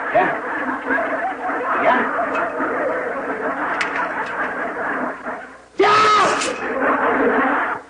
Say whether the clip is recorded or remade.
recorded